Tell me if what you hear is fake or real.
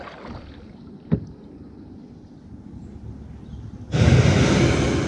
real